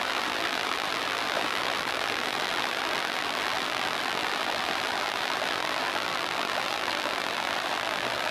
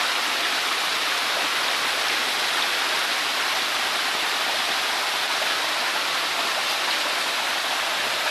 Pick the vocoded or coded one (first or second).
first